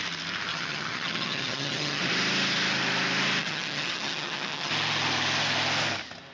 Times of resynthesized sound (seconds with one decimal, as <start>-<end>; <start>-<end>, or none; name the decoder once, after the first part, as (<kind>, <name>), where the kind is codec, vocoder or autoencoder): 0.5-2.0 (vocoder, HiFi-GAN); 3.4-4.7